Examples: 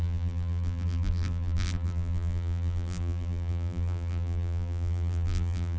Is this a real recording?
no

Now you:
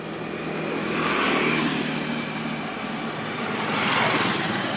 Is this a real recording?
yes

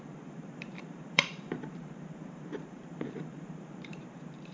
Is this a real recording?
no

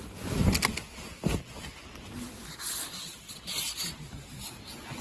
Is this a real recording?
yes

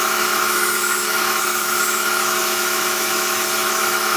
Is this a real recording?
no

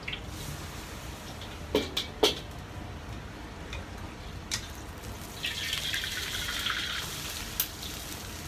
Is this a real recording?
yes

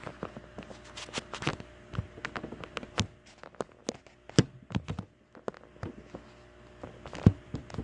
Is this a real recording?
yes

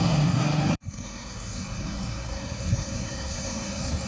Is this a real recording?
no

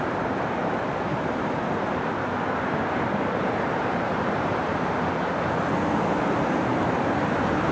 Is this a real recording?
no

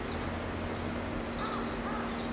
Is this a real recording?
yes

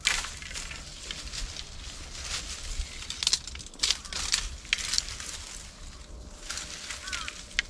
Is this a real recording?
yes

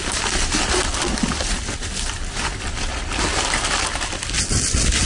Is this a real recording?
yes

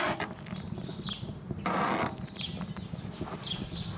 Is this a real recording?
yes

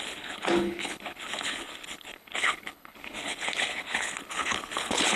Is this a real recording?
no